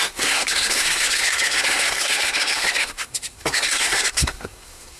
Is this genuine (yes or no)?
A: no